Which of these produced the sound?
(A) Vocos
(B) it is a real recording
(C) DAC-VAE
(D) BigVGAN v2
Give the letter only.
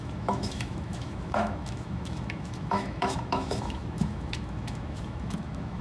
C